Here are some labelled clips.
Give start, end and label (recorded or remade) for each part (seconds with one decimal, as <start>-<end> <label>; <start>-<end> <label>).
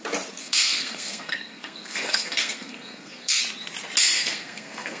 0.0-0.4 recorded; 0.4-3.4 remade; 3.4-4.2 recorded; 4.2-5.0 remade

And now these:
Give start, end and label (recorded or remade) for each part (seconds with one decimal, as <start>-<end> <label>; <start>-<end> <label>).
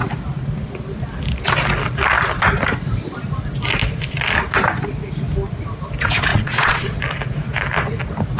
0.0-6.3 recorded; 6.3-7.0 remade; 7.0-8.4 recorded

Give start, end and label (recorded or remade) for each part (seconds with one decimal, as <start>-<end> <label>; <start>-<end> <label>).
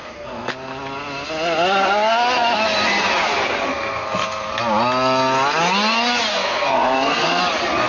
0.0-0.5 remade; 0.5-3.7 recorded; 3.7-4.5 remade; 4.5-6.3 recorded; 6.3-7.4 remade; 7.4-7.9 recorded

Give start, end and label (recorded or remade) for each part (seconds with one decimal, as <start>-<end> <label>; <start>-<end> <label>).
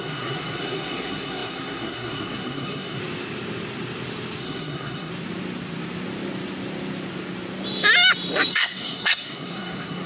0.0-3.0 remade; 3.0-4.4 recorded; 4.4-5.1 remade; 5.1-8.5 recorded; 8.5-10.1 remade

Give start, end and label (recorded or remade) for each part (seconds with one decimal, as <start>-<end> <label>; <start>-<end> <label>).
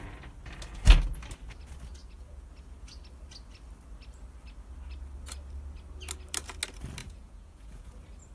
0.0-2.0 recorded; 2.0-2.5 remade; 2.5-7.0 recorded; 7.0-7.9 remade; 7.9-8.3 recorded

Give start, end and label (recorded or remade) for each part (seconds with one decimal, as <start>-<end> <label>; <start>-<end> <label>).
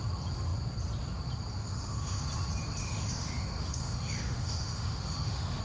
0.0-1.6 recorded; 1.6-2.2 remade; 2.2-2.8 recorded; 2.8-5.6 remade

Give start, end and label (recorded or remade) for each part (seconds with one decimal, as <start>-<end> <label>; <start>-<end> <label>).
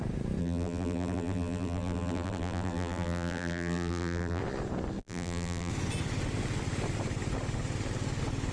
0.0-0.4 recorded; 0.4-4.4 remade; 4.4-5.0 recorded; 5.0-5.7 remade; 5.7-8.5 recorded